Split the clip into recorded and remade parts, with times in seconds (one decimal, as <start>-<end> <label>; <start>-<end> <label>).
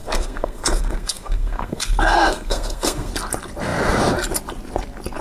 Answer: 0.0-3.1 remade; 3.1-5.2 recorded